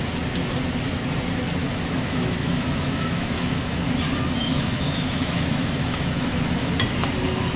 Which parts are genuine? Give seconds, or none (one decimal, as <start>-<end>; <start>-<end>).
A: 0.0-1.6; 3.8-4.4; 6.7-7.6